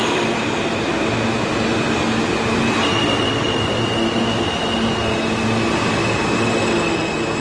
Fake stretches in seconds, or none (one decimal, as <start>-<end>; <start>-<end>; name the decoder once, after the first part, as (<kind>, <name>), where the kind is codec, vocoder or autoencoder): none